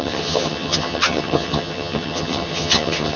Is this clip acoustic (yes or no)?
no